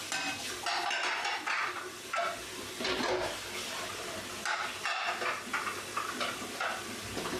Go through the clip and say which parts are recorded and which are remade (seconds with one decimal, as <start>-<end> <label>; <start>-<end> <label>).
0.0-1.6 recorded; 1.6-2.2 remade; 2.2-7.4 recorded